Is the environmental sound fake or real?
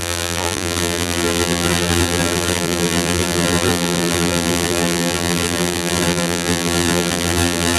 fake